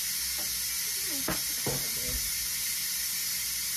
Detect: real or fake real